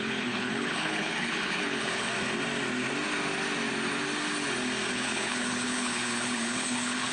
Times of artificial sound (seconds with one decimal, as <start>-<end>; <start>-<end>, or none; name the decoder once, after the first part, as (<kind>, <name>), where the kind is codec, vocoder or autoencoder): 0.0-2.1 (codec, HILCodec); 4.9-7.1